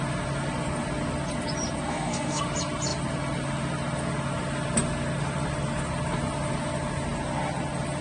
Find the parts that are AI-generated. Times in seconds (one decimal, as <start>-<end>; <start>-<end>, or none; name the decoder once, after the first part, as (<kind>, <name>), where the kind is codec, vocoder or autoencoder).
1.9-2.4 (codec, SNAC)